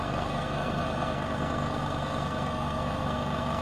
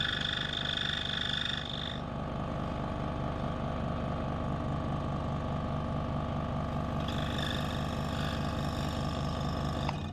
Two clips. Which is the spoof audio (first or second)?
first